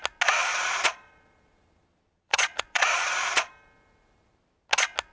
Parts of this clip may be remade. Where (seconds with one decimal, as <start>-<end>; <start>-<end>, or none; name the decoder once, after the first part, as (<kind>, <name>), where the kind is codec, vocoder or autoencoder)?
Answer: 0.5-3.5 (vocoder, Vocos)